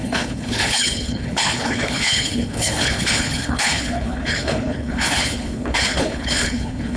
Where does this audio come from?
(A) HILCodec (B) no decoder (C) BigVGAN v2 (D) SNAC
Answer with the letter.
A